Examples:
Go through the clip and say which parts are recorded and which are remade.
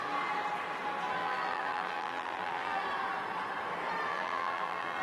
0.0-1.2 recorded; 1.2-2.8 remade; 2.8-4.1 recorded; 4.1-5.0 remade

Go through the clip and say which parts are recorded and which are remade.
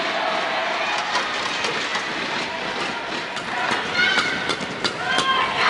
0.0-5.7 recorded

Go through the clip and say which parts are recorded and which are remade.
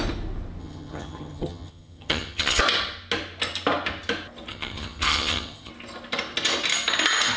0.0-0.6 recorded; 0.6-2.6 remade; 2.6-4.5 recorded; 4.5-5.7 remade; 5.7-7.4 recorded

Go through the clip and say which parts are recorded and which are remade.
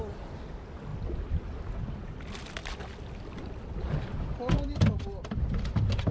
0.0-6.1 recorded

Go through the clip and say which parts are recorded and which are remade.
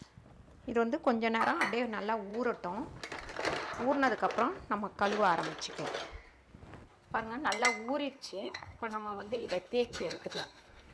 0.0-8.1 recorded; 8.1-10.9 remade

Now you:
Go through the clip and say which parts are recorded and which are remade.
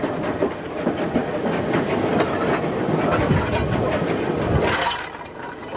0.0-5.8 recorded